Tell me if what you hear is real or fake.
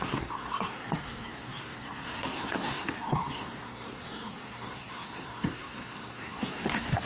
fake